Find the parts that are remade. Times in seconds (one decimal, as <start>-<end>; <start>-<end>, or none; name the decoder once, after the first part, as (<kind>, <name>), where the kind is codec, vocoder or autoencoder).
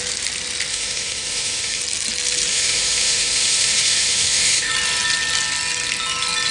0.7-1.8 (autoencoder, DAC-VAE); 2.5-4.7